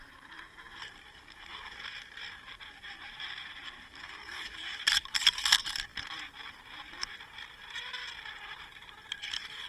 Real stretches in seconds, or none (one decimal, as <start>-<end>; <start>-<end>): 8.0-8.6